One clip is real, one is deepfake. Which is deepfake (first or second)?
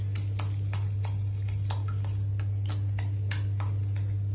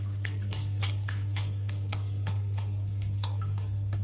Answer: second